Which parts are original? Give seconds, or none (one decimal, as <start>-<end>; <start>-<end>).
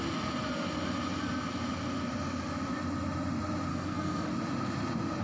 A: 0.0-3.7; 4.3-5.2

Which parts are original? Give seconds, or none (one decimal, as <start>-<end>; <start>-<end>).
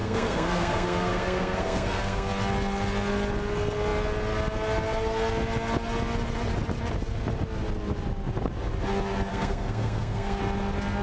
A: 2.3-9.3; 10.4-11.0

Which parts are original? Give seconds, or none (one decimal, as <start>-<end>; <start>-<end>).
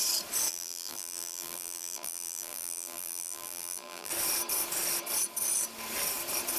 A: 0.0-0.5; 4.1-6.6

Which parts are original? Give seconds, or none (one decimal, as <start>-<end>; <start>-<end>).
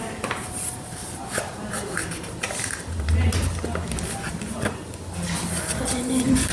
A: 2.0-5.5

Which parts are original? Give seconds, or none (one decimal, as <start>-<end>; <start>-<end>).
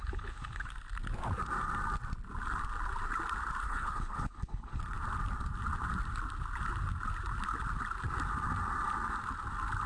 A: 0.7-3.6; 4.8-9.9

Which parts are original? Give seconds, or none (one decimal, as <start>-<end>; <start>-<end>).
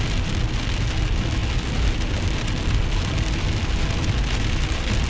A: 0.0-5.1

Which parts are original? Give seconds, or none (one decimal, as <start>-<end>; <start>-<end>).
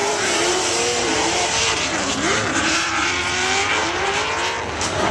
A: 3.1-5.1